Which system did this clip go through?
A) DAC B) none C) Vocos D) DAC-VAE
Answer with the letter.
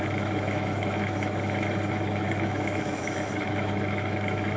D